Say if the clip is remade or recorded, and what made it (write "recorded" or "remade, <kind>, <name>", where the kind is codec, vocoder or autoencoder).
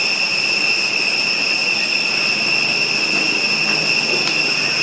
recorded